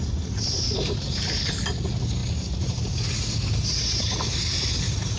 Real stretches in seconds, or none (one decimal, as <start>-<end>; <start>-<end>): 0.0-5.2